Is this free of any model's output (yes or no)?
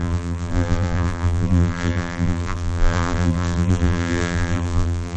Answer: no